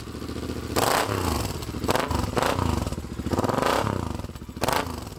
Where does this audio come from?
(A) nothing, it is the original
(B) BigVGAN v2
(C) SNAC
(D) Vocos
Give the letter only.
A